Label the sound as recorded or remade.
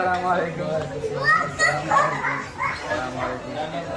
recorded